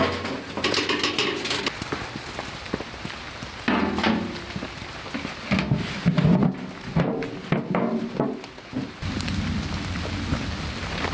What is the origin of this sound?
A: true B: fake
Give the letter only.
A